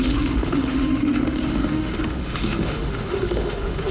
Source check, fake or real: fake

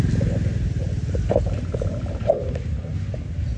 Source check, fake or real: real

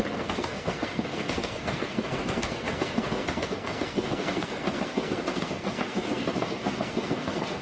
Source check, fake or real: fake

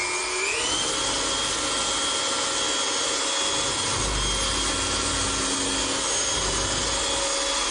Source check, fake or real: real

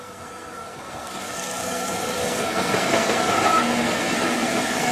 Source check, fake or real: fake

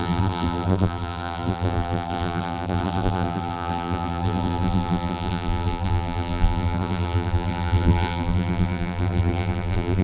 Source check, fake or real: fake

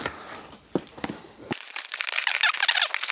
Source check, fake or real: real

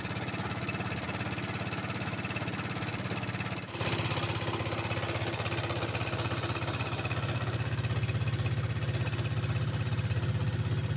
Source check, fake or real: real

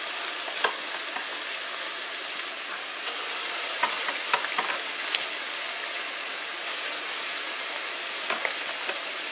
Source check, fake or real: real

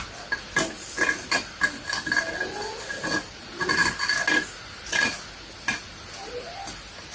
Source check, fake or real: real